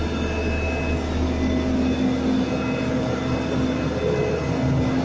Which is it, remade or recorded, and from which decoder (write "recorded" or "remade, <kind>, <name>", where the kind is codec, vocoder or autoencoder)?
recorded